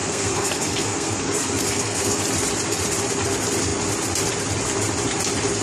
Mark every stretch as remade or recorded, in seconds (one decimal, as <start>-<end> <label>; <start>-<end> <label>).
0.0-2.2 remade; 2.2-5.6 recorded

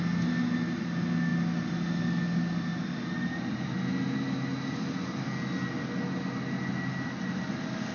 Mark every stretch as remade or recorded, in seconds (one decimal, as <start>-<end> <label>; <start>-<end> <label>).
0.0-7.9 recorded

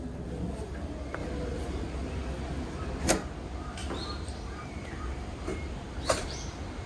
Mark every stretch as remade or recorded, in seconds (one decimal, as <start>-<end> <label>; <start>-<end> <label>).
0.0-3.8 recorded; 3.8-5.7 remade; 5.7-6.9 recorded

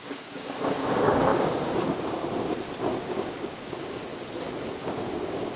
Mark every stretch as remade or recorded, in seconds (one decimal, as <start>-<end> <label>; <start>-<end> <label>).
0.0-2.2 remade; 2.2-3.0 recorded; 3.0-4.1 remade; 4.1-4.8 recorded; 4.8-5.6 remade

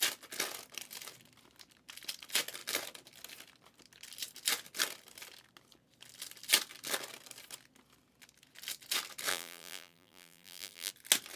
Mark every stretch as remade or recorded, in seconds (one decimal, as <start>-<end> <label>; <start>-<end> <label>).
0.0-9.3 recorded; 9.3-10.9 remade; 10.9-11.4 recorded

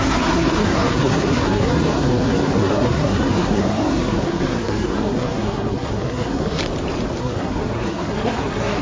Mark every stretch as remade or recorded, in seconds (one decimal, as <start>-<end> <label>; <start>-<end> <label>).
0.0-6.6 remade; 6.6-7.2 recorded; 7.2-8.8 remade